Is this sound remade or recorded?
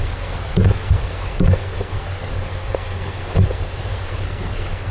remade